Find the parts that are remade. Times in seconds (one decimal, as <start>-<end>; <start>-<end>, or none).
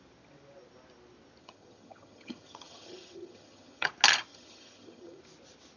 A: 1.4-3.9; 4.3-5.2